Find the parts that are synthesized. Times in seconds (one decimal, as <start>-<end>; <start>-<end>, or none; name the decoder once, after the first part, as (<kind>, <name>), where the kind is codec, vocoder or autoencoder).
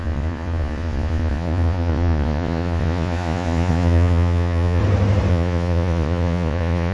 0.0-4.8 (vocoder, Vocos); 5.3-6.9